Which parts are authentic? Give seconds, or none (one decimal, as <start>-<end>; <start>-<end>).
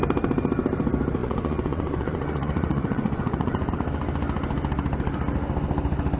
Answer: 0.0-1.2; 3.7-6.2